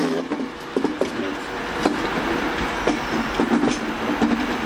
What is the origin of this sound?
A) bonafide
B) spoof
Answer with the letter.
A